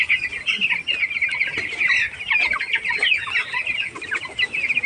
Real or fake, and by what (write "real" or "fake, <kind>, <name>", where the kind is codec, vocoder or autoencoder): real